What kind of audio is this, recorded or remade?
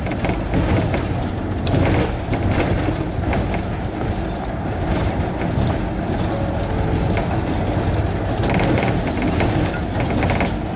recorded